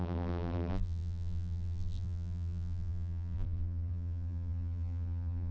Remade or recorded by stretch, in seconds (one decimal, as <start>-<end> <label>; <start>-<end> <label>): 0.0-5.5 remade